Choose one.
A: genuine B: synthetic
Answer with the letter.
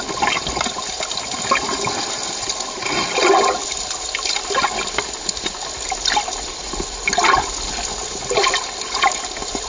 A